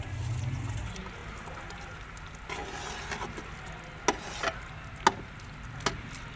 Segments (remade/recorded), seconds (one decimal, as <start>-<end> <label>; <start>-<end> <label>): 0.0-6.4 recorded